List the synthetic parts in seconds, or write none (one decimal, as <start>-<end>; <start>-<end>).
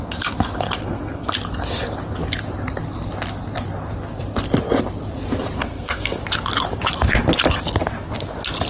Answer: 0.8-1.3; 5.6-6.2